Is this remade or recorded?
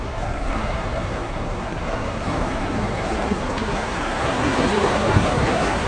remade